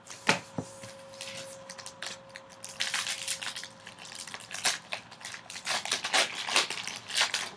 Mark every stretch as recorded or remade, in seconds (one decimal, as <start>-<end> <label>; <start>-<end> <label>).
0.0-7.6 recorded